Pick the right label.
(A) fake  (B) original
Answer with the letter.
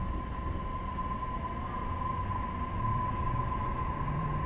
A